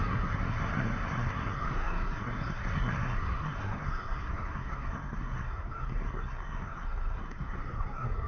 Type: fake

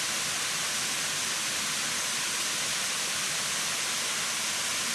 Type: real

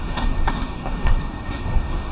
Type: fake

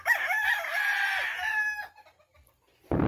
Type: real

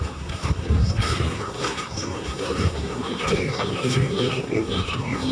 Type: fake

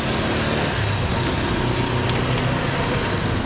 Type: real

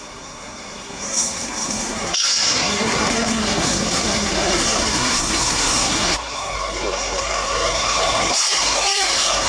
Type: fake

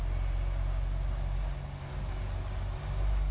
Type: real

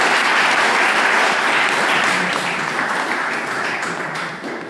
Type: real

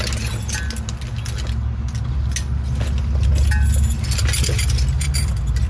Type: real